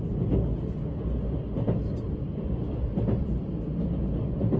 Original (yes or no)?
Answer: yes